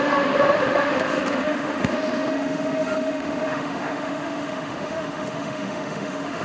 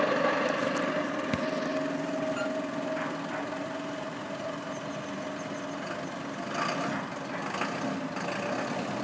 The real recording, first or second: second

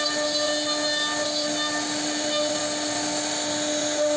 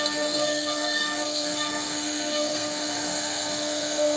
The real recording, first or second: first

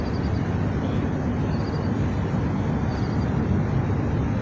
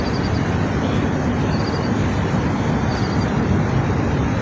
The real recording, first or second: first